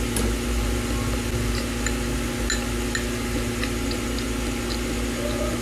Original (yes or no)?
yes